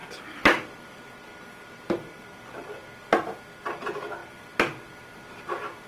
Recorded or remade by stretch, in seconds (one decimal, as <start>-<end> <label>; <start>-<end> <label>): 0.0-5.9 recorded